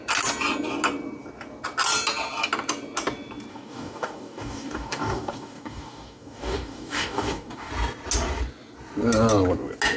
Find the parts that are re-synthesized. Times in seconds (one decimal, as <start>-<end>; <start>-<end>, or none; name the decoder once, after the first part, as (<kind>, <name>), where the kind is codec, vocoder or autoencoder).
3.5-7.7 (codec, DAC)